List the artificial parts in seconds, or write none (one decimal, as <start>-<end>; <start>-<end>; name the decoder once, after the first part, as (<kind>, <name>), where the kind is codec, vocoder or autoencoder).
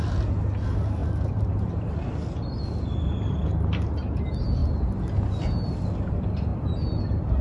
2.9-3.4 (vocoder, BigVGAN v2)